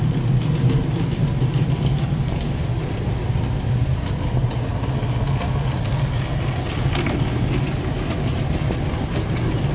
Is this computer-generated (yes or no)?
no